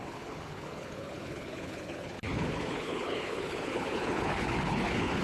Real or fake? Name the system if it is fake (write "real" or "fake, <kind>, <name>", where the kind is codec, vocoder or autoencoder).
fake, codec, HILCodec